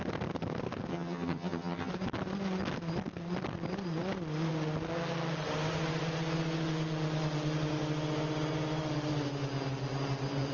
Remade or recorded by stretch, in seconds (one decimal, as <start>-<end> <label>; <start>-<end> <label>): 0.0-0.9 recorded; 0.9-1.9 remade; 1.9-10.5 recorded